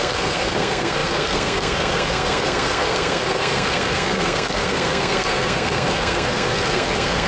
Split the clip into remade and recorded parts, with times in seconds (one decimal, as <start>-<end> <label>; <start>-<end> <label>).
0.0-7.3 remade